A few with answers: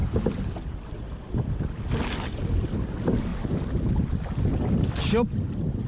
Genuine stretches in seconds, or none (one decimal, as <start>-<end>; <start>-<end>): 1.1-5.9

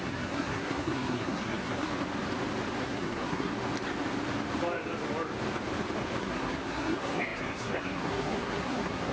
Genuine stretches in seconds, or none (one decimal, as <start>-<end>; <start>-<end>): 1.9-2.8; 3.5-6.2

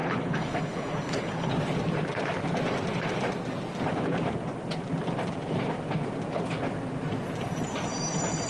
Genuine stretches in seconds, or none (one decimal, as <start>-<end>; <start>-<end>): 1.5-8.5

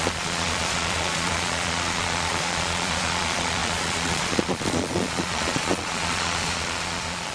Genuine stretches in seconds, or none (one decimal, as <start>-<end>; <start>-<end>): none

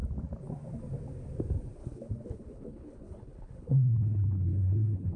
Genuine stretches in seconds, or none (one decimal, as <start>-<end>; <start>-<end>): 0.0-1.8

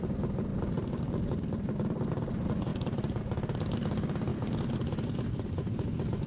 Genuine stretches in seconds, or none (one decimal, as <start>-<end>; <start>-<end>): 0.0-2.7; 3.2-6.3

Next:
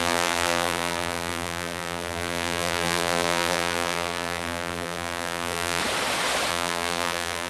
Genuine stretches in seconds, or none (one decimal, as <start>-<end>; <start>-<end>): 5.8-6.5